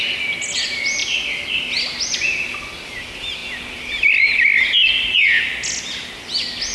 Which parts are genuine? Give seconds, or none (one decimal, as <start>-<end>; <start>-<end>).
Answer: 0.0-6.7